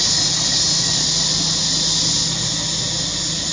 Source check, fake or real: real